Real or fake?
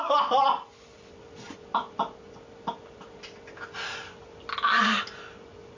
real